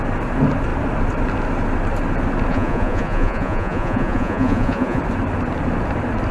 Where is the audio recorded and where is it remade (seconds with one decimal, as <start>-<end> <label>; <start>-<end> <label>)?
0.0-2.5 recorded; 2.5-5.0 remade; 5.0-6.3 recorded